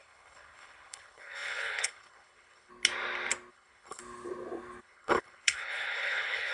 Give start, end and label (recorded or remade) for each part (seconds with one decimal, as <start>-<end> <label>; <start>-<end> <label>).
0.0-2.7 remade; 2.7-3.5 recorded; 3.5-4.0 remade; 4.0-4.8 recorded; 4.8-6.5 remade

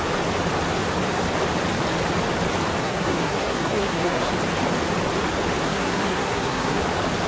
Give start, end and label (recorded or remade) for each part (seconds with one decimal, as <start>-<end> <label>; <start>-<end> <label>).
0.0-2.8 recorded; 2.8-4.3 remade; 4.3-5.6 recorded; 5.6-6.8 remade; 6.8-7.3 recorded

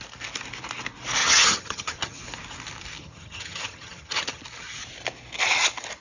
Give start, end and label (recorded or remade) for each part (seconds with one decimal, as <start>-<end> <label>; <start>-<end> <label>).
0.0-1.2 recorded; 1.2-2.2 remade; 2.2-3.0 recorded; 3.0-4.4 remade; 4.4-6.0 recorded

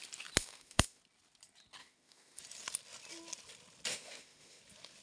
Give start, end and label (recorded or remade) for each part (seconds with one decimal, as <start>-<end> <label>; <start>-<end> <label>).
0.0-0.4 recorded; 0.4-1.0 remade; 1.0-1.8 recorded; 1.8-2.4 remade; 2.4-3.9 recorded; 3.9-4.6 remade; 4.6-5.0 recorded

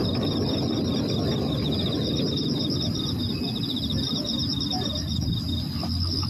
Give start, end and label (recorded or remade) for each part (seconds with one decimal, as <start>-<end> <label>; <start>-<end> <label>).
0.0-6.3 recorded

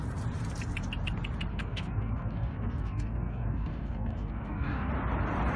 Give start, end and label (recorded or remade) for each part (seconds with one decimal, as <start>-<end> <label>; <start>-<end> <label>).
0.0-1.5 recorded; 1.5-4.9 remade; 4.9-5.6 recorded